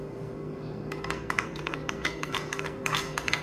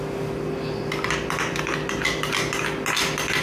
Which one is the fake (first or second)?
first